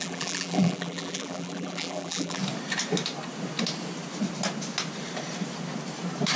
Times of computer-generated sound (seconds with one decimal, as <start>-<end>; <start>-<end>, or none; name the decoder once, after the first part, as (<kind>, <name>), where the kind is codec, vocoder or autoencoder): 0.0-2.4 (vocoder, BigVGAN v2)